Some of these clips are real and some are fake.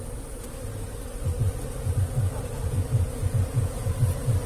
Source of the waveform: fake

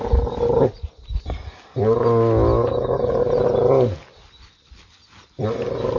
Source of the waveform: real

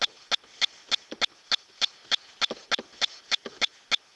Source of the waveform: real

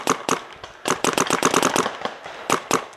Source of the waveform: fake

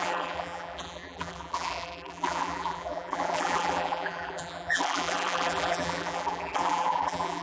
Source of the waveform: fake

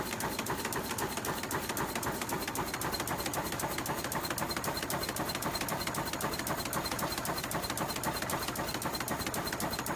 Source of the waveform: real